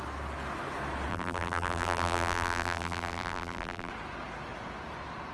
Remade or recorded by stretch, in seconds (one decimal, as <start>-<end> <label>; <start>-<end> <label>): 0.0-1.1 recorded; 1.1-3.9 remade; 3.9-5.3 recorded